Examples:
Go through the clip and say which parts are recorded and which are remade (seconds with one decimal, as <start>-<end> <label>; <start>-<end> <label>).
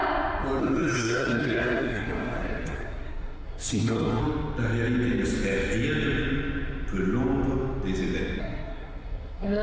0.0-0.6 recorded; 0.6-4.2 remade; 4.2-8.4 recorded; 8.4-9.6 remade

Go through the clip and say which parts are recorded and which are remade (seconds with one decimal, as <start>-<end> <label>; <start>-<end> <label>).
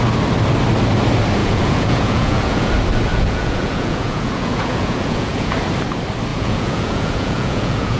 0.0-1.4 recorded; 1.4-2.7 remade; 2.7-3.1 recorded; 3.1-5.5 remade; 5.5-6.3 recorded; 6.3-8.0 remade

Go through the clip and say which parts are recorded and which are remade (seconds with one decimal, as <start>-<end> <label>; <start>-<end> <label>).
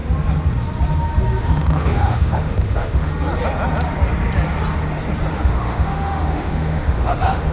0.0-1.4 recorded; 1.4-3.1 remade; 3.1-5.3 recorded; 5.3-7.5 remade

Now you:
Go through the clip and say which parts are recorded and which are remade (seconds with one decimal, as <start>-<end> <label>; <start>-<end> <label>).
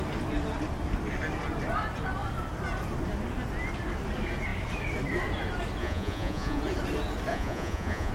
0.0-5.8 recorded; 5.8-6.6 remade; 6.6-7.3 recorded; 7.3-8.1 remade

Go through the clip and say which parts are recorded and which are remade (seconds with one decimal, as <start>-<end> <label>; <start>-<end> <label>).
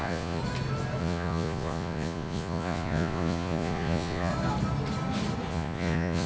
0.0-0.4 remade; 0.4-1.0 recorded; 1.0-4.3 remade; 4.3-5.5 recorded; 5.5-6.3 remade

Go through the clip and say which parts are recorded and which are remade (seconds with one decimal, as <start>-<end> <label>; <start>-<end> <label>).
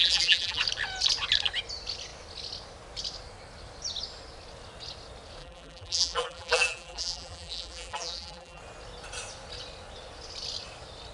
0.0-0.6 remade; 0.6-5.4 recorded; 5.4-8.6 remade; 8.6-11.1 recorded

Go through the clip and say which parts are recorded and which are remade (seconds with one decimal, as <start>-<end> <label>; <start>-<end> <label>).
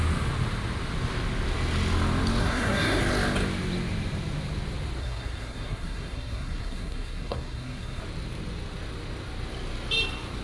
0.0-2.4 recorded; 2.4-3.0 remade; 3.0-5.0 recorded; 5.0-8.0 remade; 8.0-10.4 recorded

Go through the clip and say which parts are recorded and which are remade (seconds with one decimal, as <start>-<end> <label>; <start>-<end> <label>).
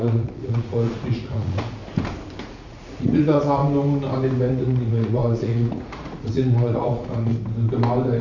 0.0-1.8 remade; 1.8-2.4 recorded; 2.4-3.6 remade; 3.6-4.5 recorded; 4.5-7.3 remade; 7.3-8.2 recorded